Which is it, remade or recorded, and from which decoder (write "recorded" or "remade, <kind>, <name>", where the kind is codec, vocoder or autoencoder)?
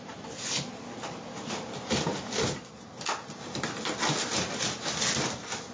recorded